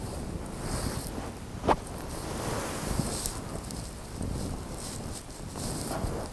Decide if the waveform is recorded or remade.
recorded